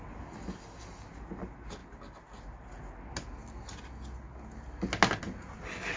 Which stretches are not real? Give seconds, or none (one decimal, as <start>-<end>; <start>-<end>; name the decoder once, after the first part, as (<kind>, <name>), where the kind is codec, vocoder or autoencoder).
none